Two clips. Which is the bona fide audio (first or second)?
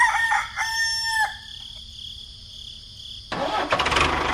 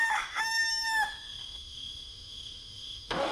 first